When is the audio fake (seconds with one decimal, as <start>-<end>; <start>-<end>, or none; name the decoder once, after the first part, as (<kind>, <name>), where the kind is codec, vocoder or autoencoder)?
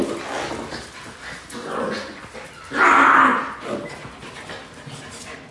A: 1.6-2.2 (vocoder, Vocos)